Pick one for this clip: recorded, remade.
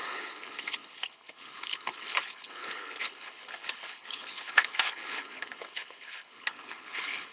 remade